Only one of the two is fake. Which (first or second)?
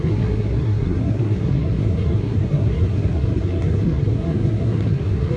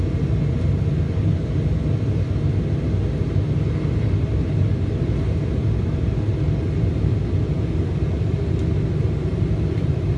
first